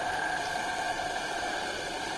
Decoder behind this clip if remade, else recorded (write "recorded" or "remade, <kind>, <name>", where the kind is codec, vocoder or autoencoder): recorded